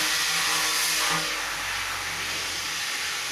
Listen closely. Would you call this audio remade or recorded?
recorded